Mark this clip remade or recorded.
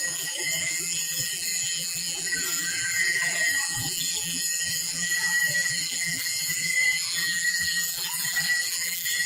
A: remade